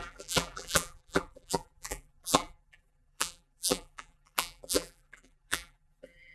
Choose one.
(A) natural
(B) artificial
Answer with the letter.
B